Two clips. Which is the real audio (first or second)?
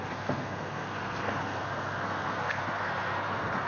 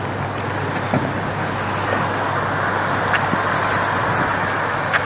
second